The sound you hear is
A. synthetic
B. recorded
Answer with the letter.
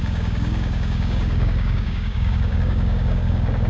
A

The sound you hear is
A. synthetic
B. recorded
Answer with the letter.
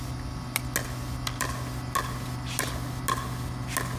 B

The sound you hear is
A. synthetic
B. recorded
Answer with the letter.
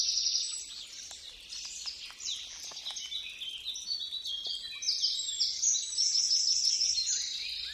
B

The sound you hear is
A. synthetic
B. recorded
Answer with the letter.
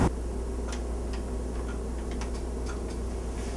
B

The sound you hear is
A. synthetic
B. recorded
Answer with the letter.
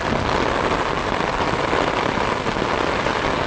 B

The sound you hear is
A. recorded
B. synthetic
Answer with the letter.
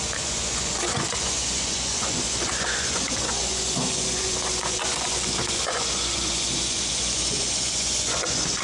B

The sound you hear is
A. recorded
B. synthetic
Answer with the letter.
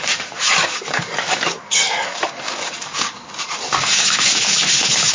B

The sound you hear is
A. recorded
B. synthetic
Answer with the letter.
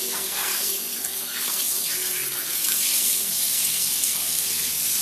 B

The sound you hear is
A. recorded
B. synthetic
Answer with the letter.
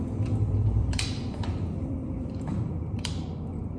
B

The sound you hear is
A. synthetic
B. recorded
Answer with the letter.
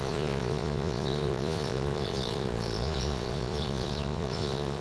A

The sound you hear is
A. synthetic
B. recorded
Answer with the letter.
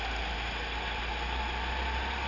B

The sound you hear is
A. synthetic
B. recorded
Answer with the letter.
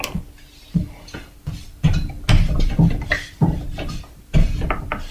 B